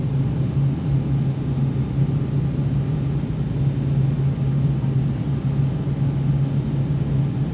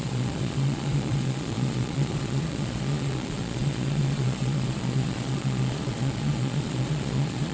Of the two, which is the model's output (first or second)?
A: second